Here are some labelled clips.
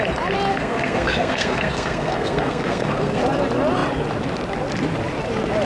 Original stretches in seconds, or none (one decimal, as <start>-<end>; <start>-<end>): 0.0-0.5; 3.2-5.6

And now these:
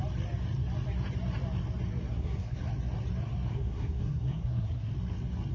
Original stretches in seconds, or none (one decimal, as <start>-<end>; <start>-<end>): 0.0-2.1; 2.6-3.5; 4.9-5.5

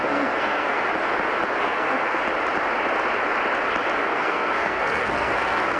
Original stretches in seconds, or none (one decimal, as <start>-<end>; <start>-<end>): 0.9-1.6; 2.2-4.0